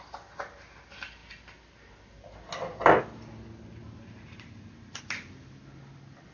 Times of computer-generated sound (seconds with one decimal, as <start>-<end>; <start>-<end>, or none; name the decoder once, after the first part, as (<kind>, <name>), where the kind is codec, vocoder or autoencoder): none